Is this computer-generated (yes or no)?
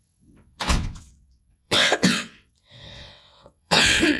yes